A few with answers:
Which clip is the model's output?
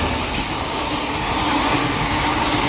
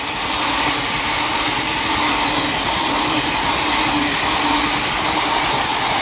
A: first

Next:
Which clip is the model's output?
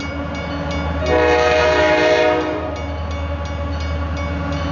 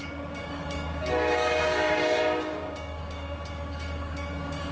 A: second